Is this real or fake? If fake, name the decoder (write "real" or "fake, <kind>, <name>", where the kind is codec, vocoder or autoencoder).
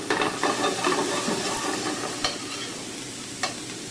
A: real